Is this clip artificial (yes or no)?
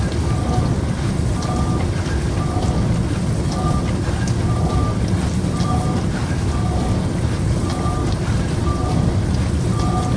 no